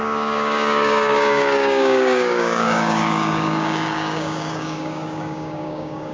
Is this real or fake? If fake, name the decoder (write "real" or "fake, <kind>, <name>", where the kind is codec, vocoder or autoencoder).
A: fake, codec, DAC